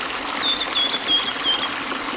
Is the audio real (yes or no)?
yes